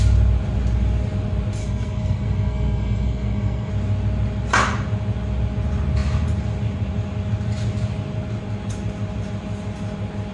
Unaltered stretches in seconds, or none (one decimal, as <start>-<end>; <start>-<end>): 0.0-1.6; 3.7-10.3